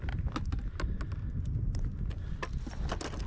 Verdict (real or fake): real